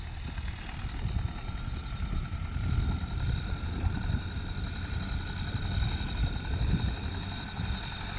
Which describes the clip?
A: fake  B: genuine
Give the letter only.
B